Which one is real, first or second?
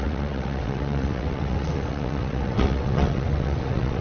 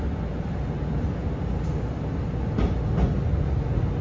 second